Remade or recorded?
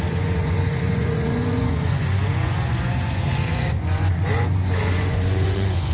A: remade